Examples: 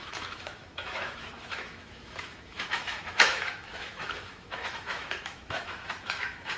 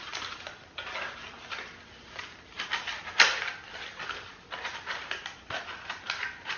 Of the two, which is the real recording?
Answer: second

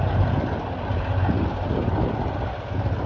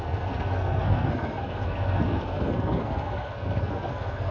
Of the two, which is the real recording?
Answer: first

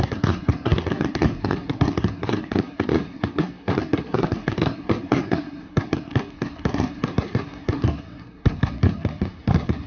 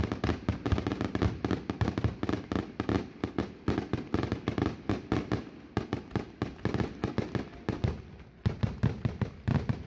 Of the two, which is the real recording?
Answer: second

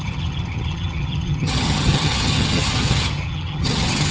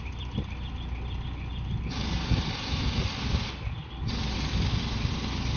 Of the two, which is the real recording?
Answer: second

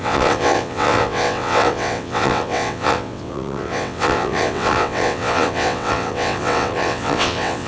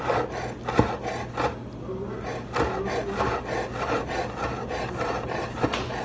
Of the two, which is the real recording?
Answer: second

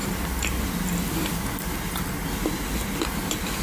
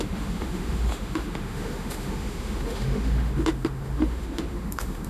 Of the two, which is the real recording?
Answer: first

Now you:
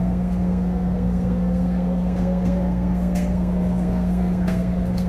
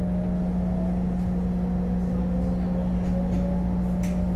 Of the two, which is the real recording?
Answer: second